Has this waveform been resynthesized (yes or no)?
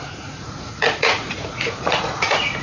yes